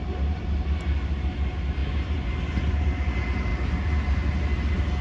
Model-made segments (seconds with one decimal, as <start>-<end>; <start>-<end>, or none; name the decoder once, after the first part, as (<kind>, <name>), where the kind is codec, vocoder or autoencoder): none